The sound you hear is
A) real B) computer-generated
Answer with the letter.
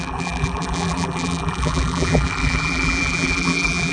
B